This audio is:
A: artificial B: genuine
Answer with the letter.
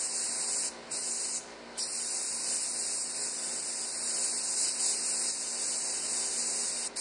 B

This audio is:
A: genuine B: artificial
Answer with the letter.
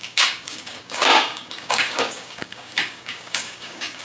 B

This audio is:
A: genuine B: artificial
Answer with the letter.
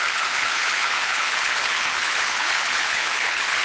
B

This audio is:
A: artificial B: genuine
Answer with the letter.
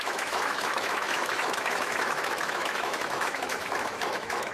A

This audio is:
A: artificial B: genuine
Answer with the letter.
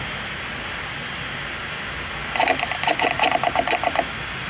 B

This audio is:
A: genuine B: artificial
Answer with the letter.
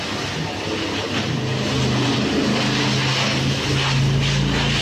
A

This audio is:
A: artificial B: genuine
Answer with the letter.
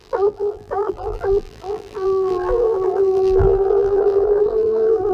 A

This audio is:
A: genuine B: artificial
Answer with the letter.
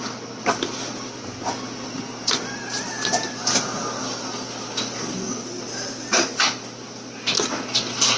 A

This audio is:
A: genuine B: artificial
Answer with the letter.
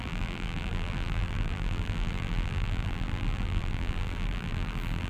B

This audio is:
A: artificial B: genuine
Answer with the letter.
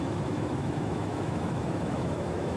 A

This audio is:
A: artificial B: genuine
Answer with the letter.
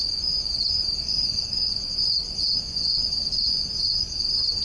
A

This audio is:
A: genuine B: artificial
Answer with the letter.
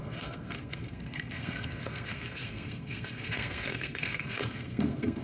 B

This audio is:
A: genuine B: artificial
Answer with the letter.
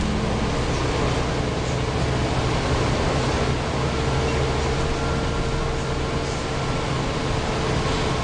A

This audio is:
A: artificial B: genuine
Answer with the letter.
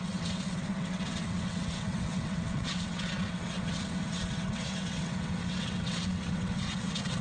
A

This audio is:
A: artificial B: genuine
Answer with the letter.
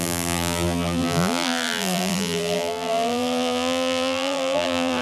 A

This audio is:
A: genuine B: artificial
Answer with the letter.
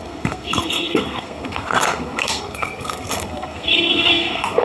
B